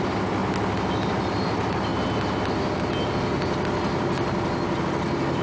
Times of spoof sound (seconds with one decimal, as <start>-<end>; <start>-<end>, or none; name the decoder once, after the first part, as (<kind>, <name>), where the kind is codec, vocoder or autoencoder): 0.0-0.4 (vocoder, BigVGAN v2); 1.1-1.9; 4.8-5.4

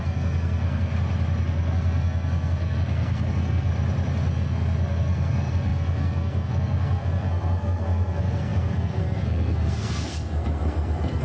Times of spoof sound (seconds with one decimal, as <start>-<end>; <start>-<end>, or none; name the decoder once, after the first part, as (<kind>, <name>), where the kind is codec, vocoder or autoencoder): 0.0-0.9 (codec, SNAC); 1.4-3.7; 4.3-11.2

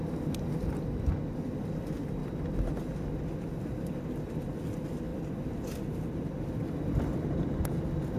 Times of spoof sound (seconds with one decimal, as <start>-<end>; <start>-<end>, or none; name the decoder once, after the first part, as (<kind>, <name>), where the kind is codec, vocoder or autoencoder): none

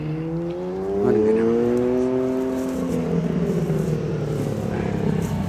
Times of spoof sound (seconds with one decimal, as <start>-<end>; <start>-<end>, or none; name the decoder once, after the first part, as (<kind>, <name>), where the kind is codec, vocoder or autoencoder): none

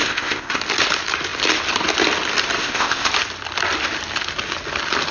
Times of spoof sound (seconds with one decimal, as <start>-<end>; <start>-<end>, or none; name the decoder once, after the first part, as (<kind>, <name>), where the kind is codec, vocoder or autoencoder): 0.0-0.6 (codec, ZipCodec); 2.6-3.1

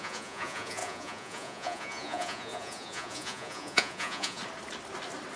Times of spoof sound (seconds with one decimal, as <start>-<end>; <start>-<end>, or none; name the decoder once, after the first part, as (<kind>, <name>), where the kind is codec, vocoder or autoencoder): 0.0-4.4 (vocoder, Vocos)

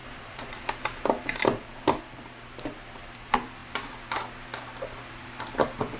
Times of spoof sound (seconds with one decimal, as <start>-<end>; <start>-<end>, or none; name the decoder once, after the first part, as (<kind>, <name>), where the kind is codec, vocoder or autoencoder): 0.0-0.7 (vocoder, Vocos)